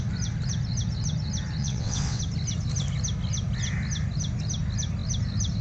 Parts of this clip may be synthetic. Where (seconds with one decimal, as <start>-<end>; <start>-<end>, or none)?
1.6-2.2